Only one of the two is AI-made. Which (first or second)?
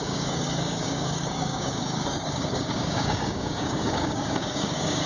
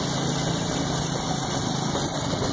first